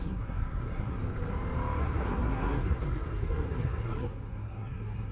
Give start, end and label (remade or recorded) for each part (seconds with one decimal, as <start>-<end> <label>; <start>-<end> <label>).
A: 0.0-1.0 remade; 1.0-1.8 recorded; 1.8-5.1 remade